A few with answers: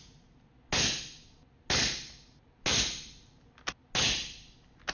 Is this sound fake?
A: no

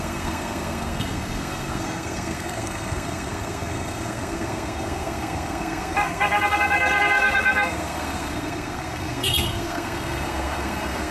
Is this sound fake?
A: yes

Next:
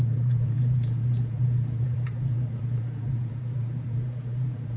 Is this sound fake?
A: yes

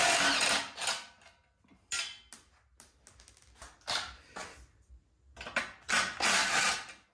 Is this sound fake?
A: no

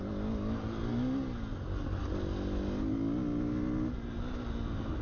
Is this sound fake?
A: no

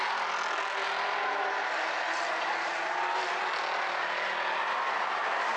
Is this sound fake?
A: no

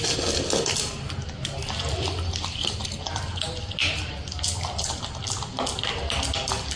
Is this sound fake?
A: no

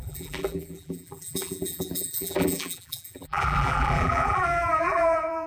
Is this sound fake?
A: yes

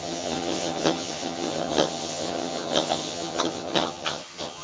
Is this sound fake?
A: yes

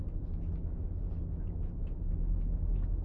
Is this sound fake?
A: no